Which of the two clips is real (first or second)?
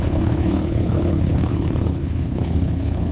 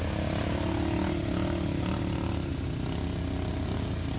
second